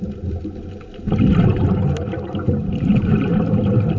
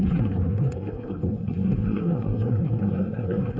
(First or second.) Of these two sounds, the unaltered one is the first